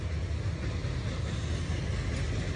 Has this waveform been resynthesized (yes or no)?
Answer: no